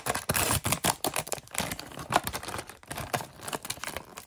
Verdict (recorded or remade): remade